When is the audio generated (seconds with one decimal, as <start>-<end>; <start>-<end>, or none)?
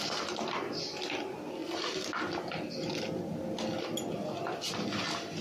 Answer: none